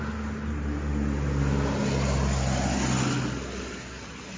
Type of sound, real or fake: real